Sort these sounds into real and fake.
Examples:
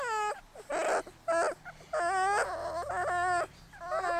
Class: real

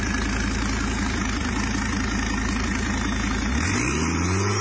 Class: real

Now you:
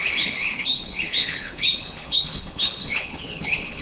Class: fake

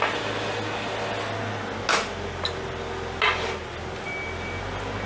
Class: real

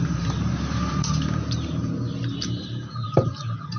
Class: fake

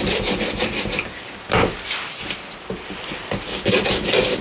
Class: real